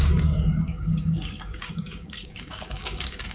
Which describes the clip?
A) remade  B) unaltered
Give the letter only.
A